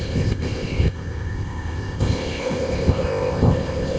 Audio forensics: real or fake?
fake